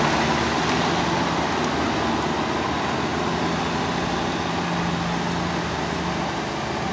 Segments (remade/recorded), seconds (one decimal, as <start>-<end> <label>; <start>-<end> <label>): 0.0-6.9 recorded